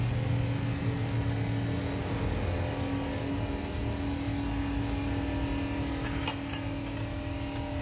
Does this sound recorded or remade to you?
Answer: recorded